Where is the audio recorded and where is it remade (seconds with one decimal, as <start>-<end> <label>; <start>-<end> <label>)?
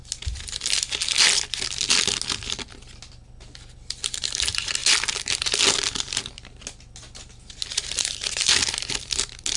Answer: 0.0-9.6 recorded